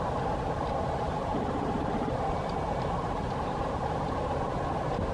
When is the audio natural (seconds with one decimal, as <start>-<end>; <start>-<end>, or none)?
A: 0.0-1.3; 4.4-5.1